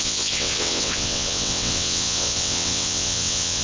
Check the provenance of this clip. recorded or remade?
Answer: remade